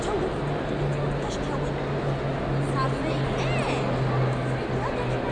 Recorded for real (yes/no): yes